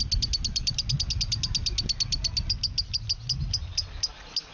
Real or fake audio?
real